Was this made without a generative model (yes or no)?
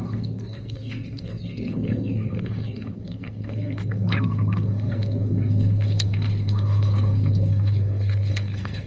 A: no